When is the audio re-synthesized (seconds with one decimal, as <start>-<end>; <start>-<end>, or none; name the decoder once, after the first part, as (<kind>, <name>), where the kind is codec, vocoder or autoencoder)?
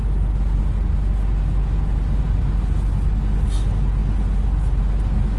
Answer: none